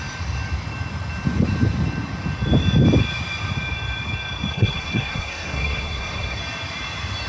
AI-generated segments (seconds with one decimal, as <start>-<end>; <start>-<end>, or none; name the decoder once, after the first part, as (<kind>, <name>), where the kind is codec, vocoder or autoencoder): 4.5-6.4 (codec, SNAC)